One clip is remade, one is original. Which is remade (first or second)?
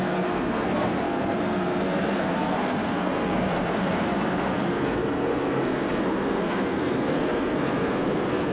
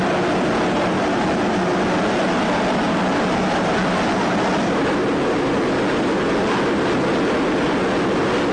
first